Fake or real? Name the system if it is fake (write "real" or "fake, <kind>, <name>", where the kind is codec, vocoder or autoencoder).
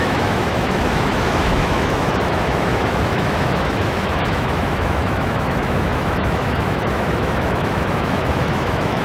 fake, autoencoder, DAC-VAE